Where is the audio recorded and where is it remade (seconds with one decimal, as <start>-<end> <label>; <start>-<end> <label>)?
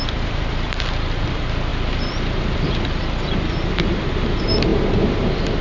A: 0.0-5.6 remade